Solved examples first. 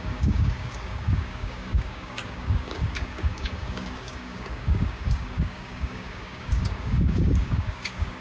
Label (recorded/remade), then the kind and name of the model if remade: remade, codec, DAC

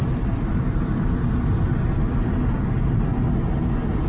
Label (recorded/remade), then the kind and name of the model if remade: recorded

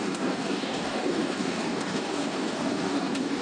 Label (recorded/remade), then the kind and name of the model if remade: remade, codec, DAC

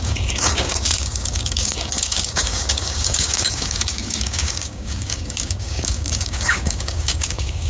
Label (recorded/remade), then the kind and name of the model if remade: remade, codec, DAC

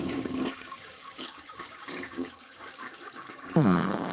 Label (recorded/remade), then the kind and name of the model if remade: remade, codec, DAC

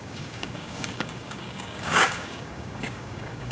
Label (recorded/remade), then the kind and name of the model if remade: remade, codec, DAC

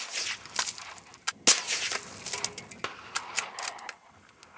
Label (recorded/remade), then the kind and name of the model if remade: recorded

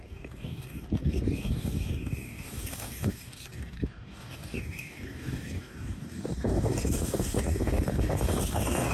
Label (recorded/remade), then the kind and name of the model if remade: remade, codec, DAC